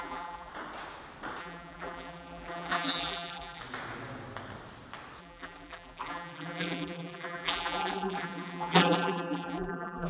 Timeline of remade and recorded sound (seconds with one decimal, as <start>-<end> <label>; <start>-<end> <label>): 0.0-0.5 remade; 0.5-1.4 recorded; 1.4-3.6 remade; 3.6-5.2 recorded; 5.2-10.1 remade